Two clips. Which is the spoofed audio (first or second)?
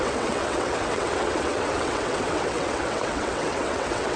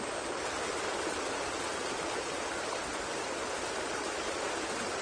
first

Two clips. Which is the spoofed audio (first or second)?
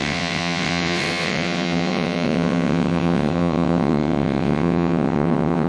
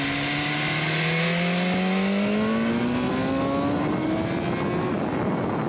first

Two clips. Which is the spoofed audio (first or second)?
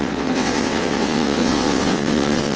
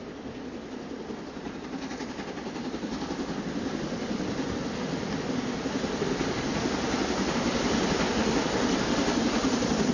first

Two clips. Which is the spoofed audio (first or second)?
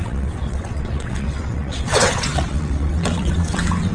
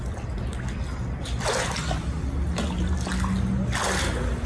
first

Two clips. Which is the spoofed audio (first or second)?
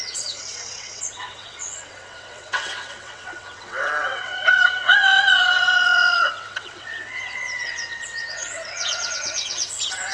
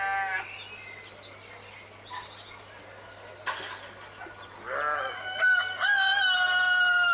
first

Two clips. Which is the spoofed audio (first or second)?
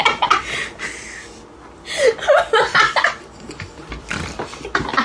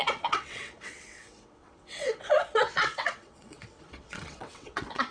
second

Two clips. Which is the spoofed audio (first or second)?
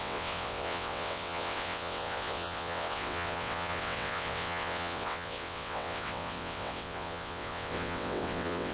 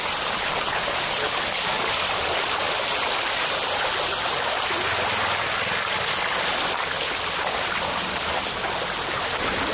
first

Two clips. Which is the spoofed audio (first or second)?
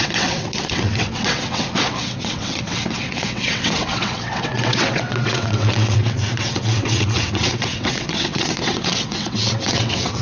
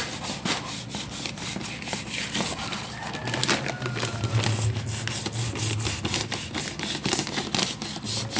first